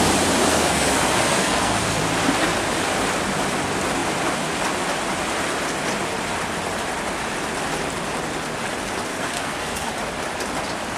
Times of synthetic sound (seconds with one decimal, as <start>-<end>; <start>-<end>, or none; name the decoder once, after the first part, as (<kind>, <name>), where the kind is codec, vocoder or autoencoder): 0.5-2.0 (codec, SNAC); 9.1-9.9